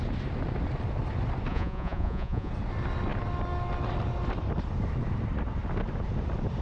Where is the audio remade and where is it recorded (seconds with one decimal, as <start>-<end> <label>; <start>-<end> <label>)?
0.0-1.5 recorded; 1.5-2.5 remade; 2.5-6.6 recorded